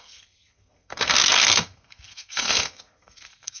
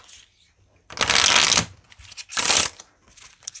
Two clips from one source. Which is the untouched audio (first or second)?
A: second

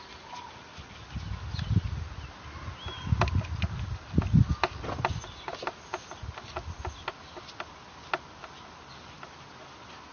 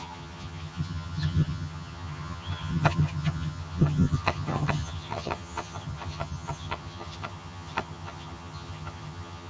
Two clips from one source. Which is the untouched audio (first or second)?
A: first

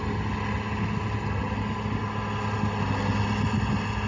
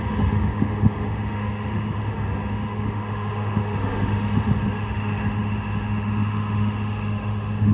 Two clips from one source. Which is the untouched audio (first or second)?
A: first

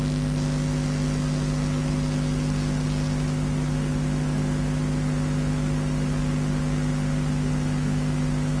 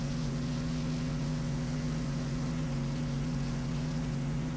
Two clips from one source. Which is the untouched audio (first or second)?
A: first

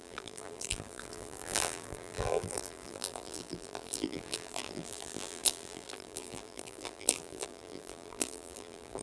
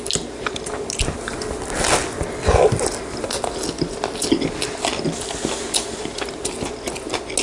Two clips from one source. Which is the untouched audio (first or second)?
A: second